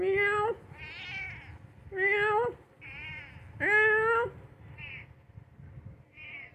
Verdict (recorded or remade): recorded